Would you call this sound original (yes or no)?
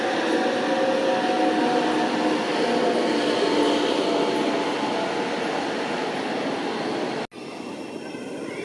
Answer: yes